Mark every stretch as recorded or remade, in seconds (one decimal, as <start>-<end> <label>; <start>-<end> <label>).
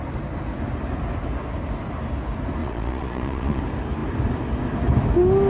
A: 0.0-2.6 recorded; 2.6-3.6 remade; 3.6-5.5 recorded